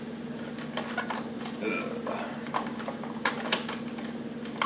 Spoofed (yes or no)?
no